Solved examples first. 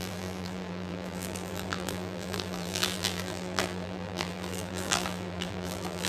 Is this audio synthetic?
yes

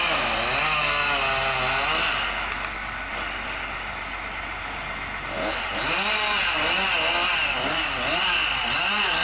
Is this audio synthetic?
no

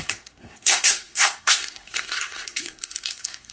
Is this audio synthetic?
yes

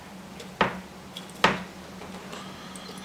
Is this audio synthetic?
no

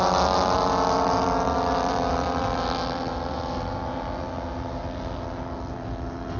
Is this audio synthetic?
no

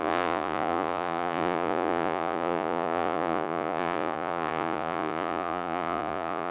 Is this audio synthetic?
yes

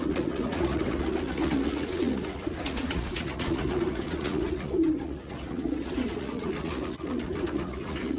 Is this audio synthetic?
yes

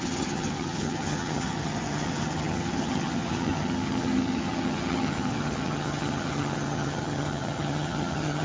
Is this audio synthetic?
yes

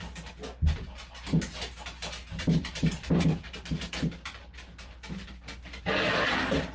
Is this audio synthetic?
no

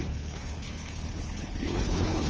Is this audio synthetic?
yes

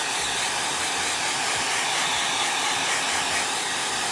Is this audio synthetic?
no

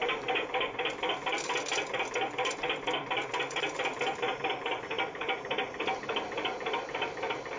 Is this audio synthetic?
no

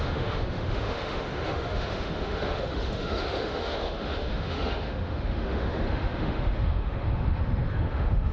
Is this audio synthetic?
yes